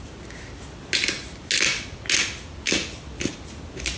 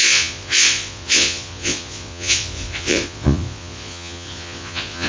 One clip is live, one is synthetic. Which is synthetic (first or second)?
second